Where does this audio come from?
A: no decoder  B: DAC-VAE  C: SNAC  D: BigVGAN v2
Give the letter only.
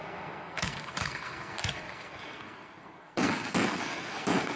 C